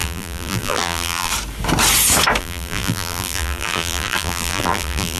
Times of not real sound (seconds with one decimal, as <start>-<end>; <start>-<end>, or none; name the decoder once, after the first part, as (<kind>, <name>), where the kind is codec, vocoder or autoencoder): 0.0-1.3 (vocoder, BigVGAN v2); 2.4-5.2